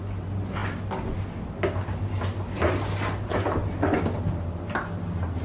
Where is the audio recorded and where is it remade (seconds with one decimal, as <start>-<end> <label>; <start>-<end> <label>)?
0.0-5.4 recorded